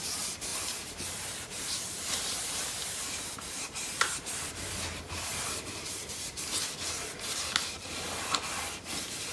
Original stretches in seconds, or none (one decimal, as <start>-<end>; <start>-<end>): 0.0-0.5; 4.5-9.3